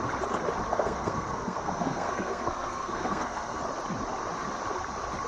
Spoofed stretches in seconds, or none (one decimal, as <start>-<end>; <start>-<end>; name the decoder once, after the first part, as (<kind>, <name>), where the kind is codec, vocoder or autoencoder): 0.7-3.6 (codec, SNAC)